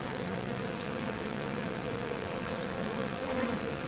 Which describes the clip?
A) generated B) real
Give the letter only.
A